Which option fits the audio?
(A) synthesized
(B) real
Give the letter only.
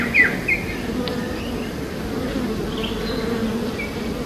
B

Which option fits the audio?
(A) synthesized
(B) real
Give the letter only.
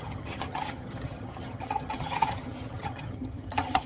A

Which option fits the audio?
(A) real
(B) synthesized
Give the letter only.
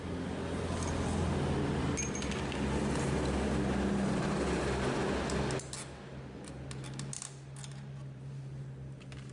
A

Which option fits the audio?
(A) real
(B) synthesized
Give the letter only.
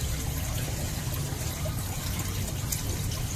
A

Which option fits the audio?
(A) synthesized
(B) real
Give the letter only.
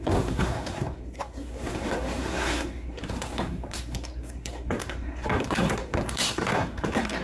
A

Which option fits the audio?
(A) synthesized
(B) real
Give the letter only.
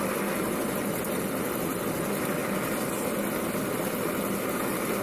B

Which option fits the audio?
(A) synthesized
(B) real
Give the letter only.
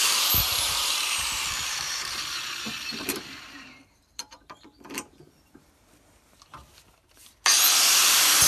A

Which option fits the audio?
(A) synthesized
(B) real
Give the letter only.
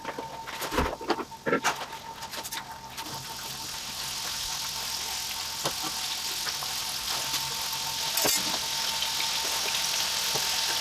B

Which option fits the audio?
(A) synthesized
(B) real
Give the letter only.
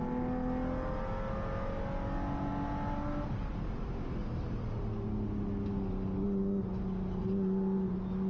B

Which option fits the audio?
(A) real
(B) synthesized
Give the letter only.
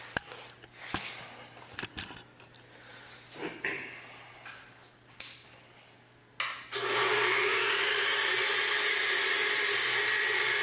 A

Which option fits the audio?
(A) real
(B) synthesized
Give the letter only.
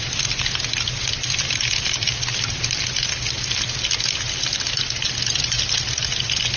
A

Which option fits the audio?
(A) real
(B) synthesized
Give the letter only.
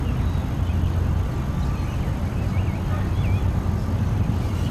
A